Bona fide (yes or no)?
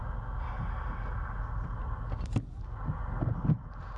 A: yes